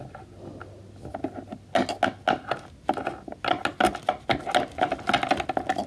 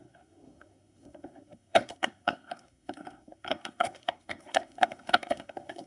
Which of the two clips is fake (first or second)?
second